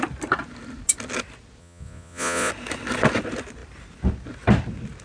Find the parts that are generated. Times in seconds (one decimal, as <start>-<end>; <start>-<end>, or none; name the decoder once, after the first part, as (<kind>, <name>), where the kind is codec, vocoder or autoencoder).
1.6-2.5 (vocoder, Vocos)